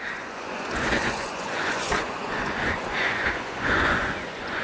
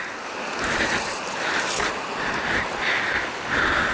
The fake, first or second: first